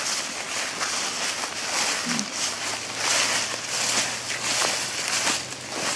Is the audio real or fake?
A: real